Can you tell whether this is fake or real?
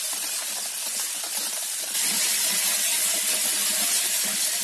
real